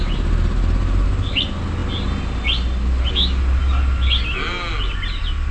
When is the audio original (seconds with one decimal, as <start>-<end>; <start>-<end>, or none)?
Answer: 0.0-5.5